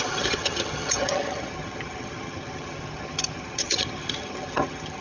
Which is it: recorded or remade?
remade